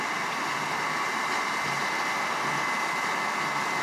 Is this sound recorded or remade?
recorded